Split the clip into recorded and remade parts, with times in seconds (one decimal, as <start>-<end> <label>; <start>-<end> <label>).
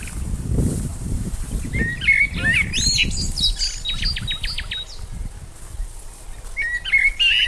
0.0-0.9 recorded; 0.9-2.0 remade; 2.0-7.5 recorded